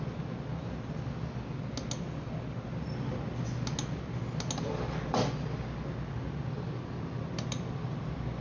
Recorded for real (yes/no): yes